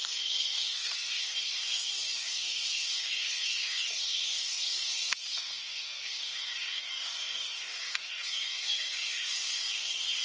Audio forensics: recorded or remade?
remade